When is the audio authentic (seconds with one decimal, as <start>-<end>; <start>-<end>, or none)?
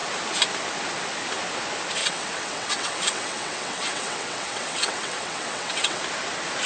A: 0.0-2.0; 6.0-6.7